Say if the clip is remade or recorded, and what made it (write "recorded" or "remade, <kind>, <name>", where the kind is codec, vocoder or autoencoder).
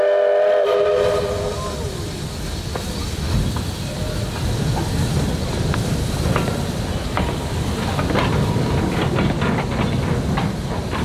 recorded